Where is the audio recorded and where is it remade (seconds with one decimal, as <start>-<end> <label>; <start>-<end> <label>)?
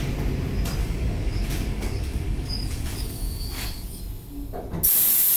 0.0-0.8 recorded; 0.8-4.0 remade; 4.0-5.4 recorded